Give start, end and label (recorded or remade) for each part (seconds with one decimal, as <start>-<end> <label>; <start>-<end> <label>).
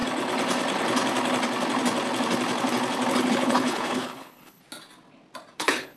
0.0-3.3 recorded; 3.3-4.6 remade; 4.6-5.6 recorded; 5.6-6.0 remade